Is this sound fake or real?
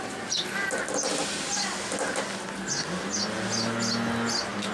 real